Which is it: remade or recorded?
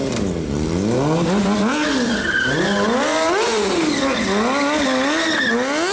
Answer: recorded